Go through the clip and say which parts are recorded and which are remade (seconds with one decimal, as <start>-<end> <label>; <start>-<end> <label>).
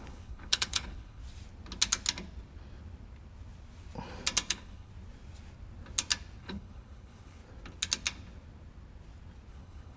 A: 0.0-1.2 remade; 1.2-4.5 recorded; 4.5-4.9 remade; 4.9-6.4 recorded; 6.4-7.4 remade; 7.4-9.5 recorded; 9.5-10.0 remade